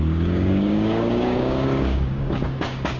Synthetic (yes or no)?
yes